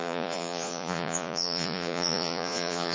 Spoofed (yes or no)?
yes